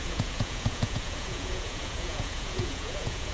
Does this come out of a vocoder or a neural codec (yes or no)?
yes